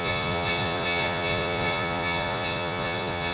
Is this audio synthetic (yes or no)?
yes